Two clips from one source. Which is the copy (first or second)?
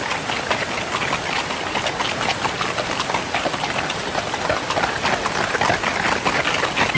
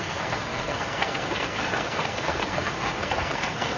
second